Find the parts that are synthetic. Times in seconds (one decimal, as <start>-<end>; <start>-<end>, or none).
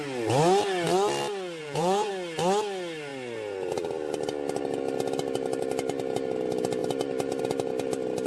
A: 1.6-2.1